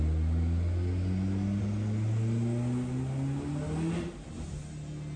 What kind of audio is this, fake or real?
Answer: real